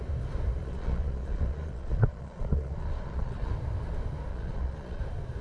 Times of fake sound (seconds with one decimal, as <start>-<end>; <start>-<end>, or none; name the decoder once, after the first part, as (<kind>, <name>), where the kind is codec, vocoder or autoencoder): 0.6-3.5 (vocoder, Vocos); 4.3-5.0